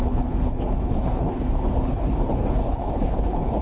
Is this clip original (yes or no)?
no